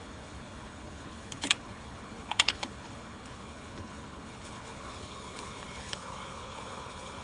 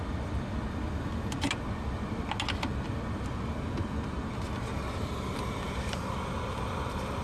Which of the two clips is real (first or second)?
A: second